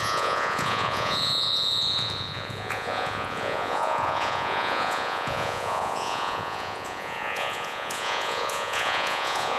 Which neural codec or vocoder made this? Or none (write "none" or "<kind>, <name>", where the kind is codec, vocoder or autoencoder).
vocoder, Vocos